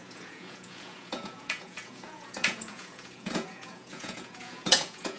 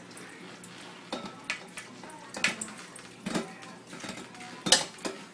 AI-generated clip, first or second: first